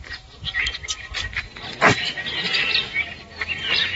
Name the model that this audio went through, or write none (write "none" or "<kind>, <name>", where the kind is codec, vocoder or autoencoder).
none